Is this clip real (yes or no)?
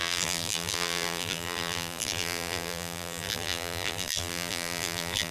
no